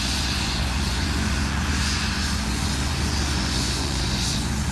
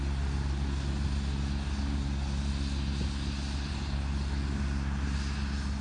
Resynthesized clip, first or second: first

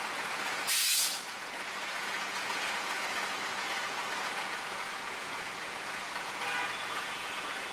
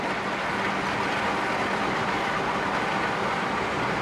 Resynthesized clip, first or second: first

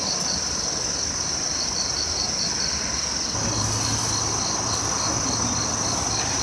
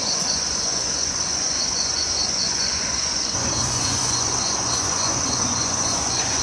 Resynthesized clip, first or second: second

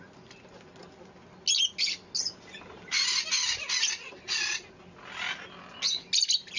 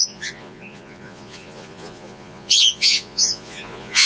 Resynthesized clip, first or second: second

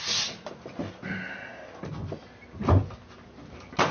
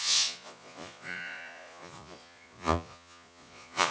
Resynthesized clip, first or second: second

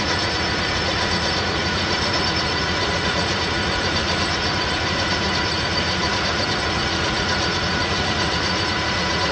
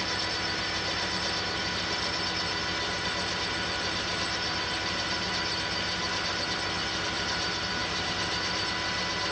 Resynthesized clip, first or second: first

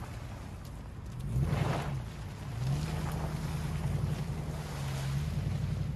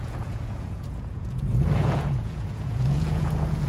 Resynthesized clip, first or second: second